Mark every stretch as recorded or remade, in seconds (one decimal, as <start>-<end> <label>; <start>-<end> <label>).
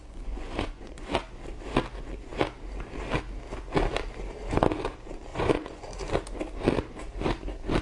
0.0-1.1 remade; 1.1-5.3 recorded; 5.3-5.9 remade; 5.9-7.8 recorded